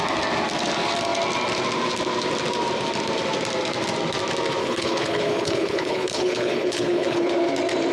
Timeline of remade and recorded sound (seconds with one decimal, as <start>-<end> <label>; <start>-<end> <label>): 0.0-4.6 recorded; 4.6-7.3 remade; 7.3-7.9 recorded